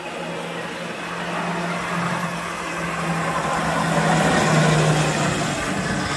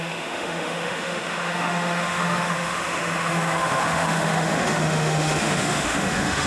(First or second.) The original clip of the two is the first